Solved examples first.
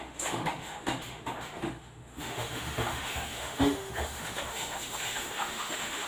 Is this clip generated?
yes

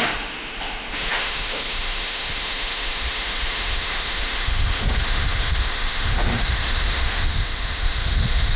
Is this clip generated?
yes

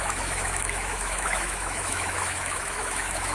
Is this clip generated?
yes